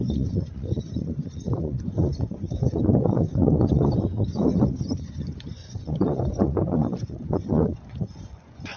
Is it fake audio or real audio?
fake